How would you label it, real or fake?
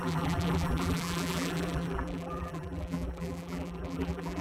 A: fake